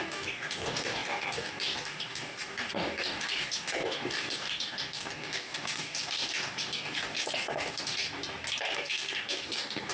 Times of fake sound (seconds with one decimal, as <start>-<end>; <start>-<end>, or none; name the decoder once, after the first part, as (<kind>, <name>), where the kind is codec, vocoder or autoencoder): 0.0-8.2 (codec, DAC); 8.7-9.9